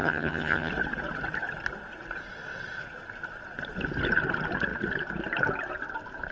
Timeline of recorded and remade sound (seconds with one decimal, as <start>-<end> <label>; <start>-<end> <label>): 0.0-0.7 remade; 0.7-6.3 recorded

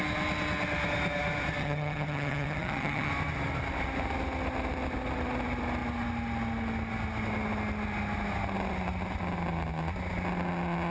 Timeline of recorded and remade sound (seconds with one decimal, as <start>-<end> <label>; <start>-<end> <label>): 0.0-1.6 recorded; 1.6-3.1 remade; 3.1-10.9 recorded

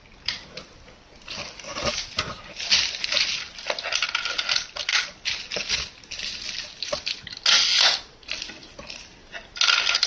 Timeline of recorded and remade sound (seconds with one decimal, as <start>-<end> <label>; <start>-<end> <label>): 0.0-10.1 recorded

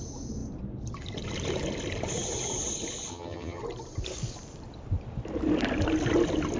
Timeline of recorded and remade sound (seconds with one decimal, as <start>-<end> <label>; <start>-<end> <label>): 0.0-3.1 recorded; 3.1-3.6 remade; 3.6-6.6 recorded

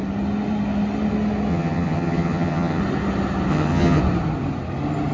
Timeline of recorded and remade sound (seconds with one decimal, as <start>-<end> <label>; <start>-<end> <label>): 0.0-1.5 recorded; 1.5-2.8 remade; 2.8-3.5 recorded; 3.5-4.0 remade; 4.0-5.1 recorded

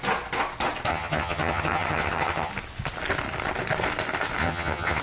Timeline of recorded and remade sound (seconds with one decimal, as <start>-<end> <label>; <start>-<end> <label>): 0.0-0.9 recorded; 0.9-2.5 remade; 2.5-4.4 recorded; 4.4-5.0 remade

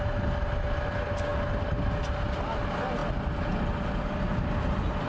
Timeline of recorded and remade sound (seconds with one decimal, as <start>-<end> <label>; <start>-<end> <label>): 0.0-5.1 recorded